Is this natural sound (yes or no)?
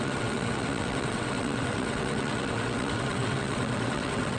no